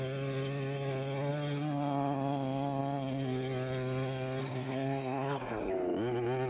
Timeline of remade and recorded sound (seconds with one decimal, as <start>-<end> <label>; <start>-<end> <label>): 0.0-4.4 recorded; 4.4-5.7 remade; 5.7-6.5 recorded